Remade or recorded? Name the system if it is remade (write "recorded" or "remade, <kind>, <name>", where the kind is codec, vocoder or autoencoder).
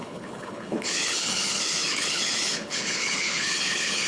remade, codec, HILCodec